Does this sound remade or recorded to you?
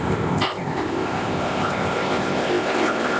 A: remade